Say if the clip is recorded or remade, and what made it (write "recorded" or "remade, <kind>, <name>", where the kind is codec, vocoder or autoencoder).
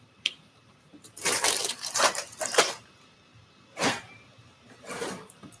remade, vocoder, BigVGAN v2